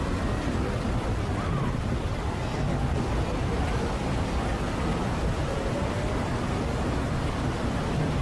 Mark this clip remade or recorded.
remade